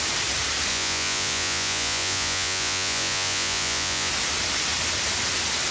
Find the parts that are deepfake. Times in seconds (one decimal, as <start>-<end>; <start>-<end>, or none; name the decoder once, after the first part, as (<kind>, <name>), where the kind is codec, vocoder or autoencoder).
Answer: 0.7-4.1 (vocoder, Vocos)